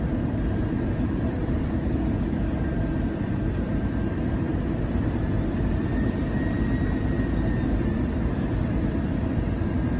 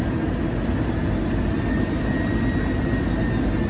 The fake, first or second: first